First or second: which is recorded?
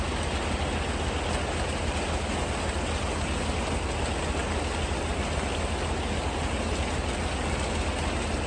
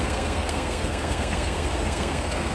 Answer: first